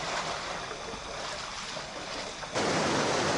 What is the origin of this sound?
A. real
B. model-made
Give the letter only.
A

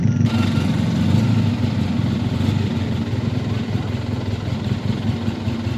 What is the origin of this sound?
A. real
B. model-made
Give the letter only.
A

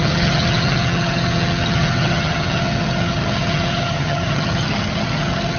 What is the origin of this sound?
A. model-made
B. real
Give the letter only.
A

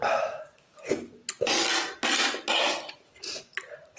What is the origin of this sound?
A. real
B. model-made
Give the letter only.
A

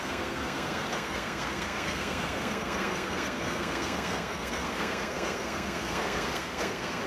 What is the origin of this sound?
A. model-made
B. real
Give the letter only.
A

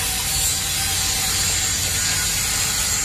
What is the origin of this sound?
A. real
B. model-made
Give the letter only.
A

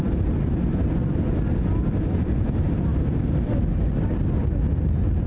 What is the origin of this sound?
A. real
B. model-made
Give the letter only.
A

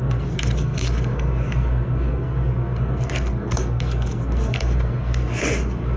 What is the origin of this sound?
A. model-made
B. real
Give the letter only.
A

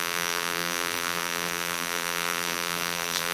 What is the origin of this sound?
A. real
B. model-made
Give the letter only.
B